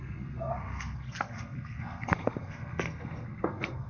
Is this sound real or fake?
fake